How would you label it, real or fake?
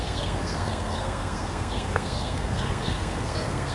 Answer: fake